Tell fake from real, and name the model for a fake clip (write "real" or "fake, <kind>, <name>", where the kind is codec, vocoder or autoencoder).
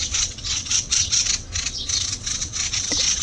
fake, vocoder, WaveNeXt